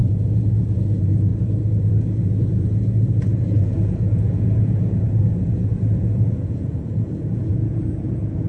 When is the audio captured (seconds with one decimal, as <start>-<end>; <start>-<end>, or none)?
none

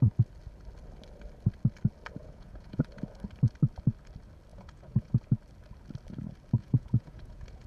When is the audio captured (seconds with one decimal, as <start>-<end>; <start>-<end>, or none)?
0.0-2.2; 2.9-4.5; 5.2-6.6

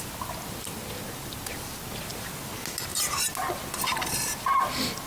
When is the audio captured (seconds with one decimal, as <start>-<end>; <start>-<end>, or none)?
0.0-5.1

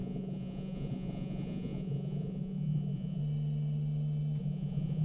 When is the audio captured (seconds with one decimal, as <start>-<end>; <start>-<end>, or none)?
3.2-4.4

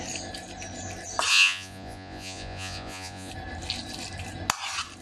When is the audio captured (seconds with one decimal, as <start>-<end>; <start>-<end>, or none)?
0.0-1.3; 3.3-5.0